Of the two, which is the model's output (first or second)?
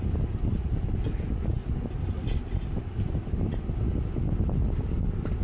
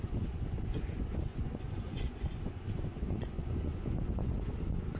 second